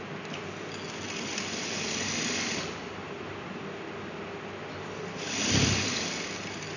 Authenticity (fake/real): real